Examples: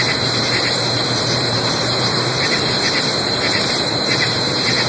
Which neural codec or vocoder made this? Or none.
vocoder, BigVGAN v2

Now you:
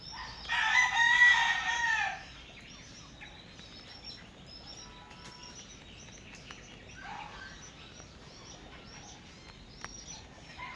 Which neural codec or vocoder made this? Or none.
none